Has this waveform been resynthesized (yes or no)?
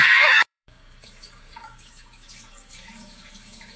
yes